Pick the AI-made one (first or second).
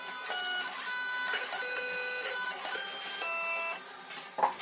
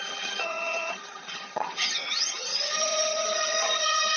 second